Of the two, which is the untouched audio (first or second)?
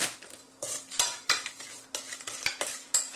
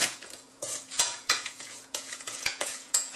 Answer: first